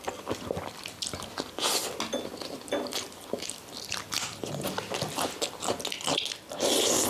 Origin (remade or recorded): recorded